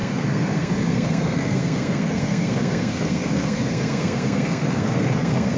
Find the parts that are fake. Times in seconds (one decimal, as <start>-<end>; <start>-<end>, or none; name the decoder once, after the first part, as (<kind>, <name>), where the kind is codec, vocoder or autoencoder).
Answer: 0.0-5.6 (codec, SNAC)